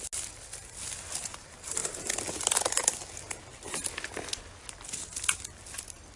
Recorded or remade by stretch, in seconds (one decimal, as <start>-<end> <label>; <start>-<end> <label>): 0.0-6.2 recorded